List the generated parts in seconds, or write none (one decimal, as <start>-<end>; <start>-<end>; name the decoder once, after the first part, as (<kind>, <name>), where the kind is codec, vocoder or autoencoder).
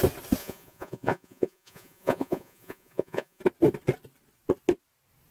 0.4-3.4 (vocoder, Vocos)